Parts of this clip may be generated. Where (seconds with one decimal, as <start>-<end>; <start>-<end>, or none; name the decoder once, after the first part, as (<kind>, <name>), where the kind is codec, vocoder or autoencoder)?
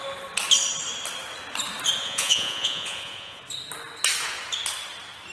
2.0-3.4 (vocoder, Vocos)